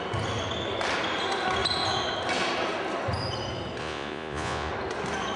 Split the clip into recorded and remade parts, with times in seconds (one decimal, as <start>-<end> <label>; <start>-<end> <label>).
0.0-3.8 recorded; 3.8-4.7 remade; 4.7-5.4 recorded

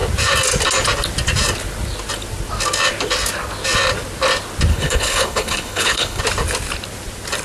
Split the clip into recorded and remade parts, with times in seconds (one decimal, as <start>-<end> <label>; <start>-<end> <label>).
0.0-4.7 recorded; 4.7-6.2 remade; 6.2-7.4 recorded

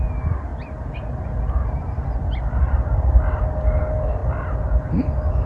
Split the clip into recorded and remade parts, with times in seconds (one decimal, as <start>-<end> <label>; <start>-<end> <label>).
0.0-5.5 recorded